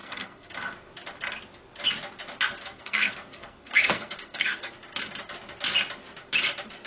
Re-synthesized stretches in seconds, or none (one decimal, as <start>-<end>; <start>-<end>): 0.0-0.5; 2.6-4.7